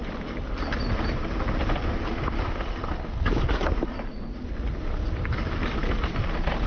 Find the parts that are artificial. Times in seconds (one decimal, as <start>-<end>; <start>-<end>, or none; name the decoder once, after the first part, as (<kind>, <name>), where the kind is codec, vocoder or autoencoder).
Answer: none